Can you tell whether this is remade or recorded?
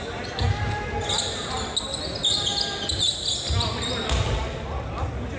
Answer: recorded